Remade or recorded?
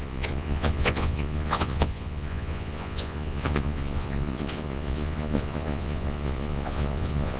remade